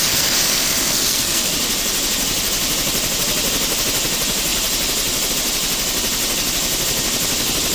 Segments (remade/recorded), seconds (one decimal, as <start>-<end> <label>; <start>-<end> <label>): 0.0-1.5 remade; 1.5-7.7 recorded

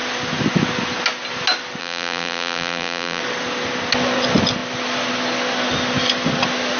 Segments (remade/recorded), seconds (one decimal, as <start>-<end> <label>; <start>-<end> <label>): 0.0-1.8 recorded; 1.8-3.2 remade; 3.2-6.8 recorded

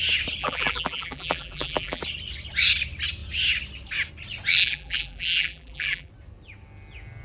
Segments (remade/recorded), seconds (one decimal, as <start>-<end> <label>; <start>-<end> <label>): 0.0-0.4 recorded; 0.4-2.0 remade; 2.0-4.5 recorded; 4.5-6.1 remade; 6.1-7.2 recorded

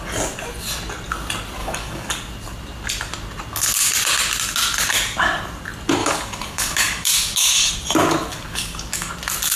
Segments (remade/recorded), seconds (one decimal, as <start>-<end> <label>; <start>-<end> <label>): 0.0-1.6 recorded; 1.6-2.1 remade; 2.1-6.0 recorded; 6.0-7.7 remade; 7.7-8.3 recorded; 8.3-9.1 remade; 9.1-9.6 recorded

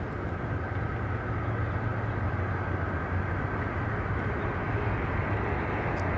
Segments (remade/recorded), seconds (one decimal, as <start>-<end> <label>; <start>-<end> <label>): 0.0-1.9 recorded; 1.9-4.5 remade; 4.5-6.2 recorded

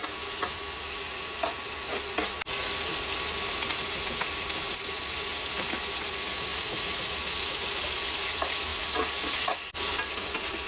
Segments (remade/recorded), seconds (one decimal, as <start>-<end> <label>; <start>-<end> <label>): 0.0-6.5 recorded; 6.5-7.0 remade; 7.0-10.7 recorded